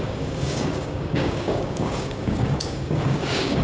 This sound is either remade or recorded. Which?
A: remade